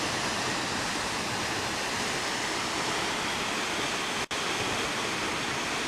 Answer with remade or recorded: recorded